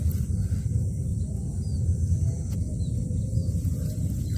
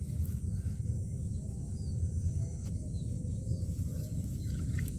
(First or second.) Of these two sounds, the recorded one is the first